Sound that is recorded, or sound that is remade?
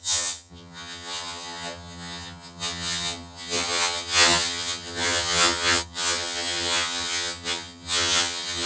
remade